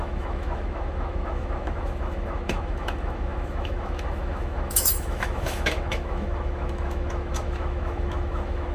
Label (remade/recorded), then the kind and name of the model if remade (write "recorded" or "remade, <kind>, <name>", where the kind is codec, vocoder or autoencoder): remade, autoencoder, DAC-VAE